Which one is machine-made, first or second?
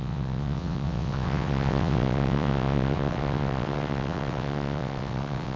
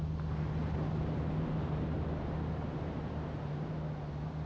first